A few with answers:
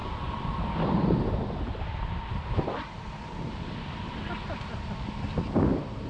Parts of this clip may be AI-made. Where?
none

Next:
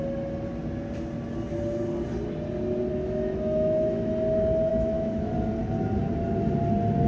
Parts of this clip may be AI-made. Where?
2.9-4.1 (autoencoder, DAC-VAE); 4.7-5.3

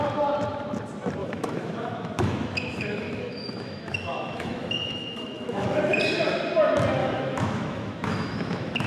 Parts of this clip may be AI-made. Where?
1.2-5.8 (autoencoder, DAC-VAE); 7.0-8.9